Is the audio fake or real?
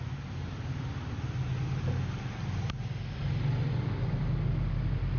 real